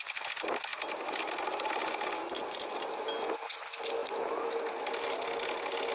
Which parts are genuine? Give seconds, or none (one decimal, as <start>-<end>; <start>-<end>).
0.0-5.9